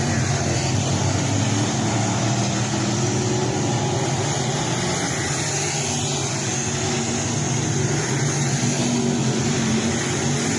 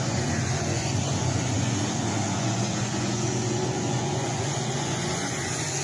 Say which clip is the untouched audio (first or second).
first